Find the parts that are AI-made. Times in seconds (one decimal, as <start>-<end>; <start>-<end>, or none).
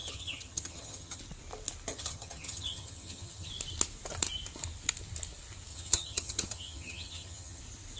0.0-1.2; 1.9-3.5; 5.7-7.6